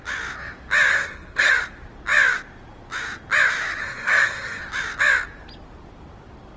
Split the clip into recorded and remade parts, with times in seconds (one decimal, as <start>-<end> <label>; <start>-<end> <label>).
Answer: 0.0-0.9 recorded; 0.9-1.5 remade; 1.5-3.8 recorded; 3.8-4.6 remade; 4.6-6.6 recorded